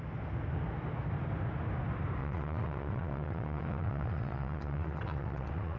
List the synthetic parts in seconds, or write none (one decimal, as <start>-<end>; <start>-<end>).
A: 2.2-5.8